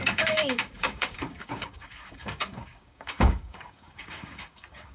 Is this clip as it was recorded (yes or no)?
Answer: no